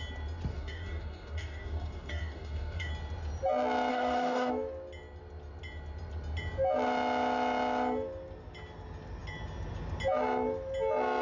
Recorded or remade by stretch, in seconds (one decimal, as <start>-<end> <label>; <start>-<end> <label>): 0.0-0.5 recorded; 0.5-2.9 remade; 2.9-3.9 recorded; 3.9-4.5 remade; 4.5-11.2 recorded